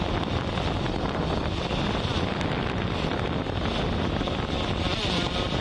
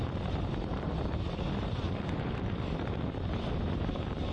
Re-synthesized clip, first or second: second